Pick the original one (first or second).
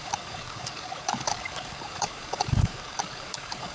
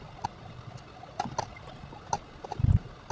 second